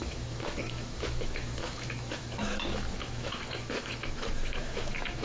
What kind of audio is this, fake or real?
fake